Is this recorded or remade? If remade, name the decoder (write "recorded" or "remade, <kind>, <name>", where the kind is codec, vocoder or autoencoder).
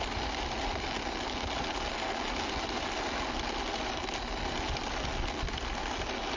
recorded